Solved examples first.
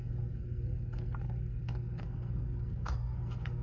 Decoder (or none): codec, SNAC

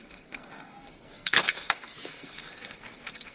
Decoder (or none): codec, SNAC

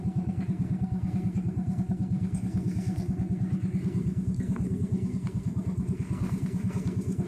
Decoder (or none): codec, SNAC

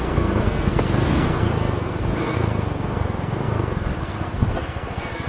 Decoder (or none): codec, SNAC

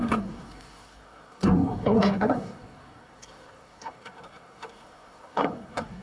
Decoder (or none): codec, SNAC